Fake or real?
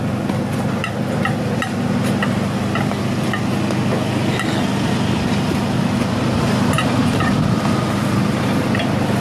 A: real